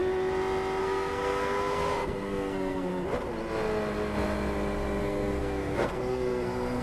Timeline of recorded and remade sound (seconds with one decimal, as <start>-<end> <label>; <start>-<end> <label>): 0.0-0.8 recorded; 0.8-2.9 remade; 2.9-5.0 recorded; 5.0-6.8 remade